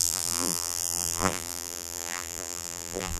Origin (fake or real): fake